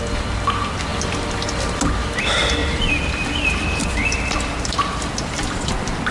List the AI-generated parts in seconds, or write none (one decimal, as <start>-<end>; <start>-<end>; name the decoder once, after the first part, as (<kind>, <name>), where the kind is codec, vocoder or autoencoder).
2.6-5.5 (vocoder, BigVGAN v2)